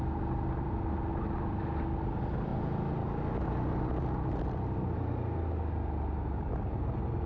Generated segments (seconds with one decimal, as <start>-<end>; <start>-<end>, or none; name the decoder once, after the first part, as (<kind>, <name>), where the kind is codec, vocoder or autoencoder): 0.0-1.1 (vocoder, BigVGAN v2); 2.0-2.5; 6.5-7.3